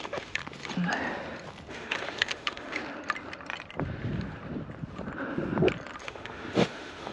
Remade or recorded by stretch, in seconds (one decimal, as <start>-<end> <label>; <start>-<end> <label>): 0.0-0.4 remade; 0.4-1.7 recorded; 1.7-2.8 remade; 2.8-6.0 recorded; 6.0-7.1 remade